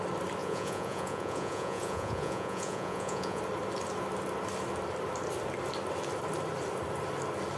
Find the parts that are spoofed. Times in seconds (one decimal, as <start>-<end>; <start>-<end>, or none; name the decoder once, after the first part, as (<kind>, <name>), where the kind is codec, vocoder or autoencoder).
0.4-3.4 (vocoder, Vocos)